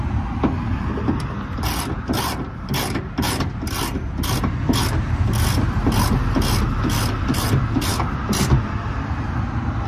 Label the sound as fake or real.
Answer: real